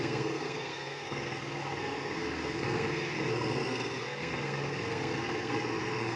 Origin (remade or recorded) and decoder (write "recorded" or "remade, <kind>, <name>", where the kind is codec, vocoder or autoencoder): remade, codec, SNAC